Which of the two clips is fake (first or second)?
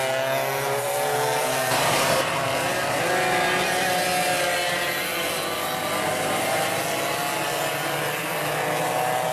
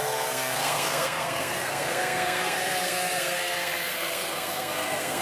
second